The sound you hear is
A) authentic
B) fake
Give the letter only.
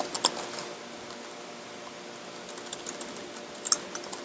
A